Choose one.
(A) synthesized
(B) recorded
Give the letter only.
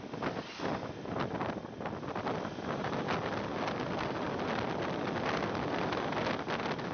B